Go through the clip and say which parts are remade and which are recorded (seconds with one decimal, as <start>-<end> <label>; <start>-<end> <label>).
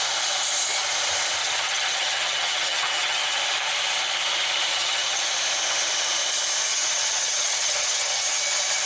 0.0-1.4 recorded; 1.4-3.4 remade; 3.4-4.7 recorded; 4.7-5.2 remade; 5.2-6.7 recorded; 6.7-8.4 remade; 8.4-8.9 recorded